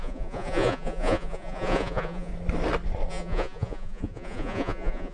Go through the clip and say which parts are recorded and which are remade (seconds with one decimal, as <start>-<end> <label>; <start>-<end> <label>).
0.0-2.3 remade; 2.3-3.1 recorded; 3.1-5.1 remade